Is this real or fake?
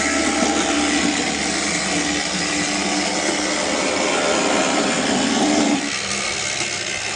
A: real